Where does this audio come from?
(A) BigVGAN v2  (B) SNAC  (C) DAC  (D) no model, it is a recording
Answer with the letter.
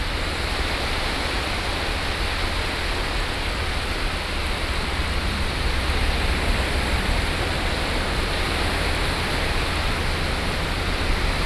D